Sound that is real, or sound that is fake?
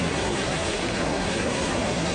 fake